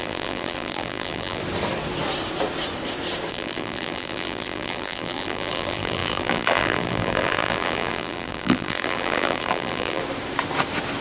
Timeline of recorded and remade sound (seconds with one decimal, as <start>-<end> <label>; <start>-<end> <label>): 0.0-1.4 remade; 1.4-3.3 recorded; 3.3-10.0 remade; 10.0-11.0 recorded